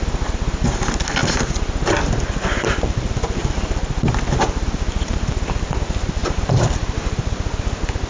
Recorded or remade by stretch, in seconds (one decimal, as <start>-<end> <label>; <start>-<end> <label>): 0.0-6.2 recorded; 6.2-6.7 remade; 6.7-8.1 recorded